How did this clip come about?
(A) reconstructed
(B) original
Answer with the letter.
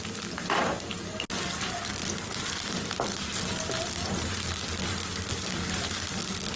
B